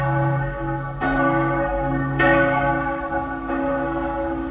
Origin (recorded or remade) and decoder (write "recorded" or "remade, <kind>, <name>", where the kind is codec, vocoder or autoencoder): remade, codec, SNAC